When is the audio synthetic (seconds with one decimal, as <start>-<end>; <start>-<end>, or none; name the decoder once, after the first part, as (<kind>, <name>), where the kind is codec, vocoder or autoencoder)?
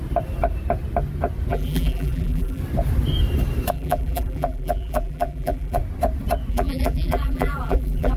1.5-2.6 (vocoder, BigVGAN v2); 3.7-5.8; 6.5-8.2